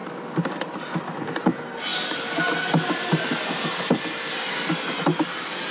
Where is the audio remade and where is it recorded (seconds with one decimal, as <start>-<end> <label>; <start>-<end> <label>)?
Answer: 0.0-0.6 remade; 0.6-5.7 recorded